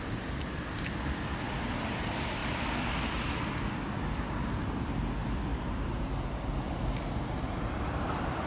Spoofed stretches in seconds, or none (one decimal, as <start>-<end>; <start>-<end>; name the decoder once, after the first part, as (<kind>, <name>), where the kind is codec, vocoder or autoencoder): 5.5-6.5 (vocoder, BigVGAN v2)